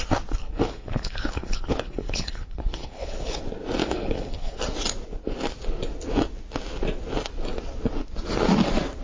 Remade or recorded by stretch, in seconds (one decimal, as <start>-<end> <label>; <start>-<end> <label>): 0.0-0.4 recorded; 0.4-3.4 remade; 3.4-3.8 recorded; 3.8-4.6 remade; 4.6-9.0 recorded